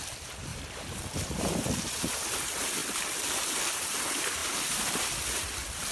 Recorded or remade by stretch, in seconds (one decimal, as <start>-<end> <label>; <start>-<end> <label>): 0.0-0.5 recorded; 0.5-1.7 remade; 1.7-2.8 recorded; 2.8-3.4 remade; 3.4-4.4 recorded; 4.4-4.9 remade; 4.9-5.9 recorded